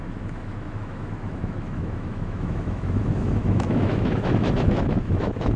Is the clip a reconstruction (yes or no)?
yes